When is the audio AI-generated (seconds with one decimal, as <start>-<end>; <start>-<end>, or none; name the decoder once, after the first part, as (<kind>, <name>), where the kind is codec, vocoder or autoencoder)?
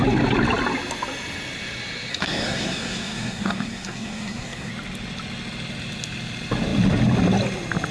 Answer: 2.1-4.7 (codec, SNAC)